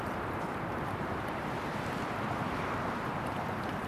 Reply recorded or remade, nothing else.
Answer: remade